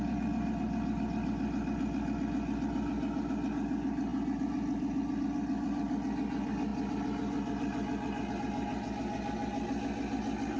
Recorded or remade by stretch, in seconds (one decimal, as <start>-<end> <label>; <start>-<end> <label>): 0.0-10.6 recorded